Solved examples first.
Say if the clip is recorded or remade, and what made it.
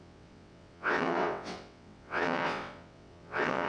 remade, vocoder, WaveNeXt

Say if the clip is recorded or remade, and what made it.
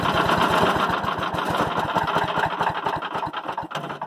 recorded